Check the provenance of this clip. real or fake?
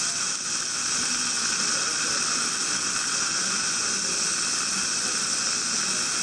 real